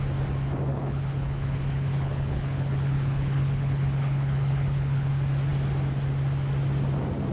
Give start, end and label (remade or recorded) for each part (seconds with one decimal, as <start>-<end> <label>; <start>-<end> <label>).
0.0-0.7 recorded; 0.7-5.1 remade; 5.1-7.3 recorded